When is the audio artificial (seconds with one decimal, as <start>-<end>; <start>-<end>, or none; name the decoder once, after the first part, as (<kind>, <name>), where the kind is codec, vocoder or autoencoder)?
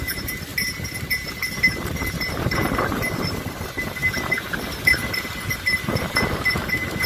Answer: 0.0-0.5 (vocoder, BigVGAN v2); 1.6-7.1